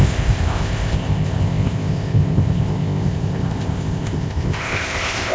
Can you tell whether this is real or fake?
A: fake